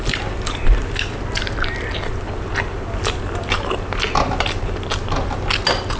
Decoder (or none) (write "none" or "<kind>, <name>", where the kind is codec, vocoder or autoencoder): none